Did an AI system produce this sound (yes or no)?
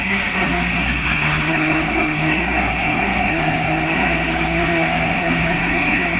yes